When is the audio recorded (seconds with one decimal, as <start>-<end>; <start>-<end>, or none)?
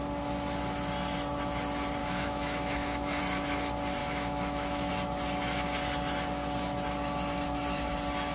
0.0-2.0; 3.2-4.0; 4.9-8.3